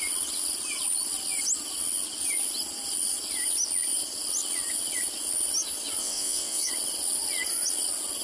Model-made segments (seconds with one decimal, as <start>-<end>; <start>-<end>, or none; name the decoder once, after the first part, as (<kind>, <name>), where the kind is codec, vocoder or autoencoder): 6.0-6.7 (vocoder, WaveNeXt)